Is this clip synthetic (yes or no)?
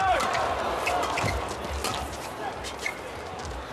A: no